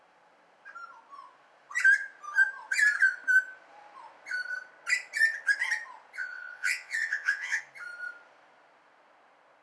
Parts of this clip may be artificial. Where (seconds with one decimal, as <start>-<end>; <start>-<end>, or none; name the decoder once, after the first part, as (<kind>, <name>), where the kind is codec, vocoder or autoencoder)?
6.2-7.6 (vocoder, WaveNeXt)